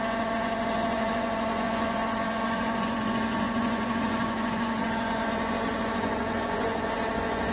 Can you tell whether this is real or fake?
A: fake